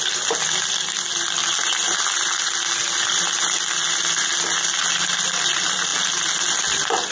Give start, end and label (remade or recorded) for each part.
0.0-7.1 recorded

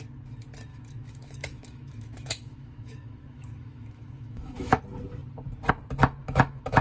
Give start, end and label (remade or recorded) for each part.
0.0-0.7 recorded; 0.7-4.8 remade; 4.8-6.2 recorded; 6.2-6.8 remade